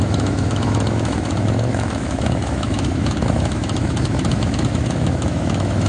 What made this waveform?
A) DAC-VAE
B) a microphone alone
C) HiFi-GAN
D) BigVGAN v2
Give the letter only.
A